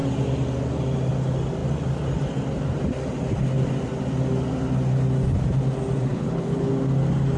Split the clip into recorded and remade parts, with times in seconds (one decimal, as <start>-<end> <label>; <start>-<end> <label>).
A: 0.0-6.1 recorded; 6.1-6.7 remade; 6.7-7.4 recorded